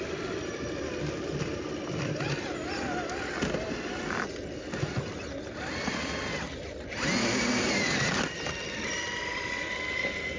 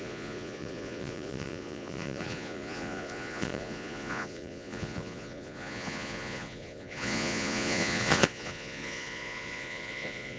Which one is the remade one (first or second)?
second